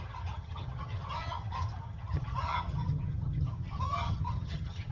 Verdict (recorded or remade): remade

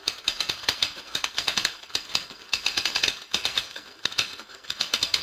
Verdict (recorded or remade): remade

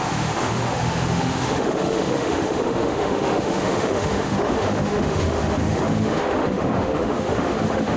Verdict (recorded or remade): remade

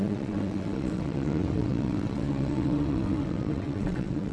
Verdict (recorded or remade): remade